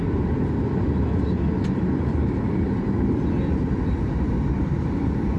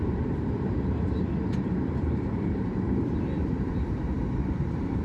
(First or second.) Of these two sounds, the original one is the first